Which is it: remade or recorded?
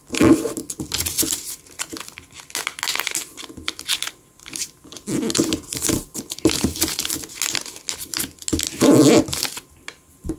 recorded